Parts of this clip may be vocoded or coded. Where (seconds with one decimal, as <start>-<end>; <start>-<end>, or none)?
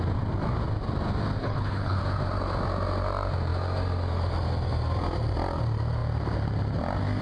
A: 1.4-2.0